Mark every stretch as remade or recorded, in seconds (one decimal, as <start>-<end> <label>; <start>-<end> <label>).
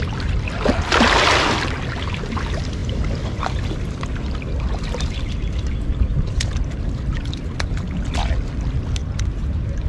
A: 0.0-9.9 recorded